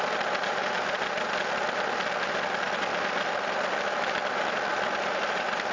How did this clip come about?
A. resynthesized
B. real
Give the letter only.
B